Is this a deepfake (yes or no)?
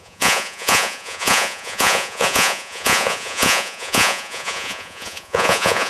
yes